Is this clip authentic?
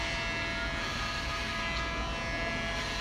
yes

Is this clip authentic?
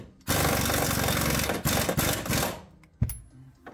yes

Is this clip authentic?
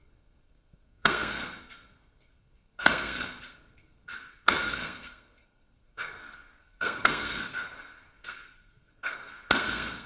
no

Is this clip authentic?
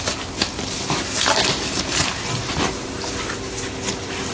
yes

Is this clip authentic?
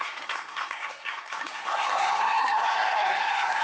no